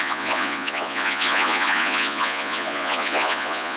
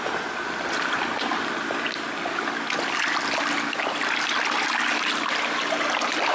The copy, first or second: first